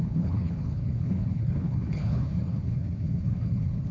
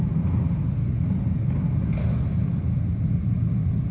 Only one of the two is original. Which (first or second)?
second